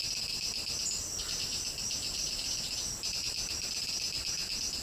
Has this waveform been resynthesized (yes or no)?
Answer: no